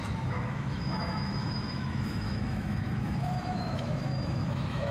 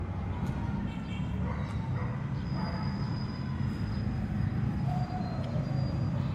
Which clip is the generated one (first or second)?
first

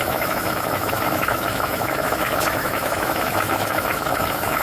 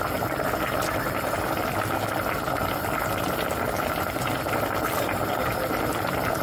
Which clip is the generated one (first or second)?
first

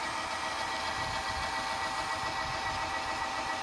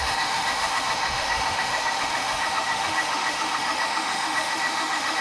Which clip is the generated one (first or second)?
second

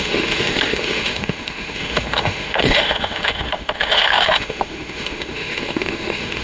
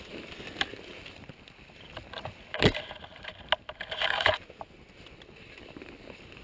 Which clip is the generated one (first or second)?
first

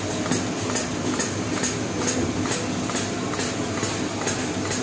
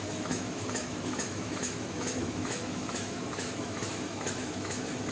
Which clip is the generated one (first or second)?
second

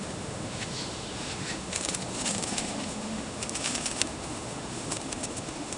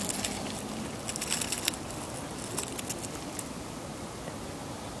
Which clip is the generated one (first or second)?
first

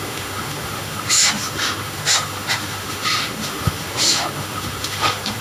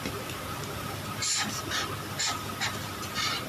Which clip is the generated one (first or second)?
first